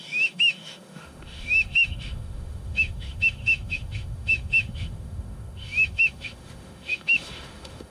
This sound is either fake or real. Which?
fake